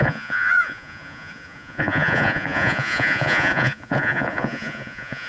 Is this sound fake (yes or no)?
yes